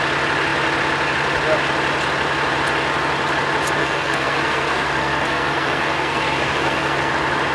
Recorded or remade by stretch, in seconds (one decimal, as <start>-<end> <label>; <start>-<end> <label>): 0.0-3.8 recorded; 3.8-7.1 remade; 7.1-7.5 recorded